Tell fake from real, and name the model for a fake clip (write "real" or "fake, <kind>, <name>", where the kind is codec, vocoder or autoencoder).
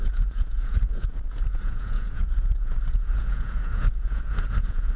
fake, vocoder, Vocos